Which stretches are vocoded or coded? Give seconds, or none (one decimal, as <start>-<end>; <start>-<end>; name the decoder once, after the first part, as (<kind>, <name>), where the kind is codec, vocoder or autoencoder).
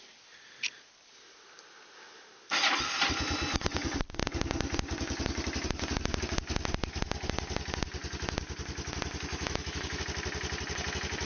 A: 9.3-10.0 (autoencoder, DAC-VAE)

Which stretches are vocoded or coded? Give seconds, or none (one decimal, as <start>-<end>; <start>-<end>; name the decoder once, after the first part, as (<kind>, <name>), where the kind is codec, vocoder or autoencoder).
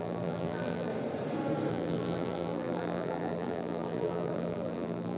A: 0.0-0.9 (vocoder, BigVGAN v2); 1.7-5.2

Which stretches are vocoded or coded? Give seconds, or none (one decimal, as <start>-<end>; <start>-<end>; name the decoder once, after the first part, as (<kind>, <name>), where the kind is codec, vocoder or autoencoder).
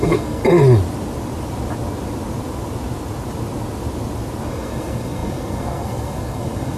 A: 0.0-0.4 (codec, SNAC); 4.5-6.8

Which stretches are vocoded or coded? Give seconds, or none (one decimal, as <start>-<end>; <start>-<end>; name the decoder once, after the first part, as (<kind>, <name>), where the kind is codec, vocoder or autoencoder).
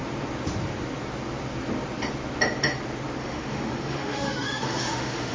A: 3.2-5.3 (autoencoder, DAC-VAE)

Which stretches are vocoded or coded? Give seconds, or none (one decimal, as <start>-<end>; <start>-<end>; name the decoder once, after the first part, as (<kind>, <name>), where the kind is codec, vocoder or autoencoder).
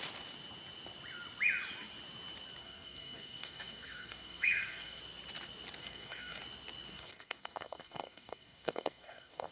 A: 2.6-5.0 (codec, SNAC); 5.8-6.4; 6.9-9.5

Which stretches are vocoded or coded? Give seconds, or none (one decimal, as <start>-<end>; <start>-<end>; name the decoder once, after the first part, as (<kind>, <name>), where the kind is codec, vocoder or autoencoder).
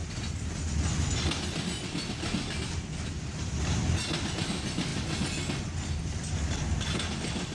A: none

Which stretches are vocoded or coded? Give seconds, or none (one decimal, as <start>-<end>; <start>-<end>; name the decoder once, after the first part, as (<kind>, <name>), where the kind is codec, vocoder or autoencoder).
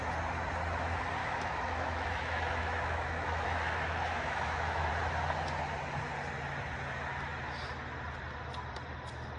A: 1.2-4.9 (autoencoder, DAC-VAE)